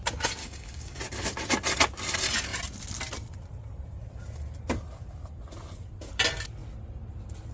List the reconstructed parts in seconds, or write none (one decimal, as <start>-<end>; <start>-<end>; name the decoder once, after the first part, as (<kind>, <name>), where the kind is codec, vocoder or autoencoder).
0.4-1.0 (codec, DAC)